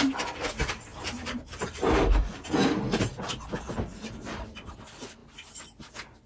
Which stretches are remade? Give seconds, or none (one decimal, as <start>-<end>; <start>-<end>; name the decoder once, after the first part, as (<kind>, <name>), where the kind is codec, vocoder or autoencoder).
0.9-4.7 (vocoder, BigVGAN v2)